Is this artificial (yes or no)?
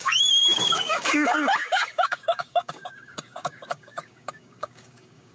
yes